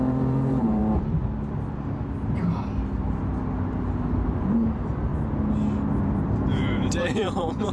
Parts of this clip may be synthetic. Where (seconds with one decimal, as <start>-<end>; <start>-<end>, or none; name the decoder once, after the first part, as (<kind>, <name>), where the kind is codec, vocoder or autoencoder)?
0.0-0.8 (vocoder, BigVGAN v2); 4.5-5.1; 5.9-7.7